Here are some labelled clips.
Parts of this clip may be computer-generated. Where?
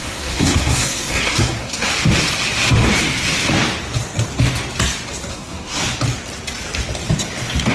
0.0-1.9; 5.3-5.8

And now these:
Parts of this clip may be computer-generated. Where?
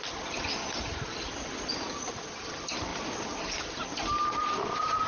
none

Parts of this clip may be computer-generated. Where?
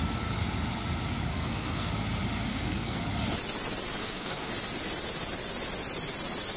1.3-1.9; 2.5-3.0; 4.0-4.5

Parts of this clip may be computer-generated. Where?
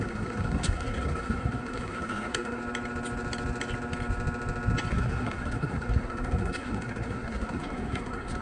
0.0-2.6; 4.9-8.4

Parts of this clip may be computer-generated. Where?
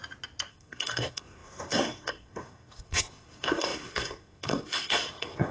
0.5-5.5